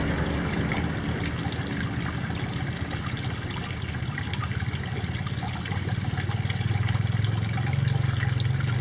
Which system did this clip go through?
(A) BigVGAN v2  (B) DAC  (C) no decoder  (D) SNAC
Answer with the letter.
C